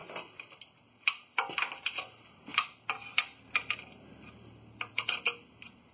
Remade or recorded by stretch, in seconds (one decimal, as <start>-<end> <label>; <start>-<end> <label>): 0.0-5.9 recorded